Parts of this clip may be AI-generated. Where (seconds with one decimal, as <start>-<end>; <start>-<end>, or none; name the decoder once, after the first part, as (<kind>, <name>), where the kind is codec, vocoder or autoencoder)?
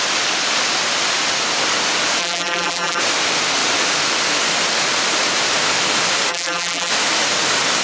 2.2-3.0 (vocoder, BigVGAN v2); 6.3-6.9